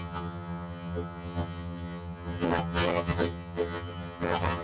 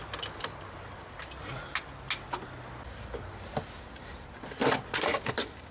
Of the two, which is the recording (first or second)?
second